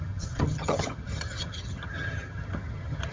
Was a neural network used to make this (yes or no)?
yes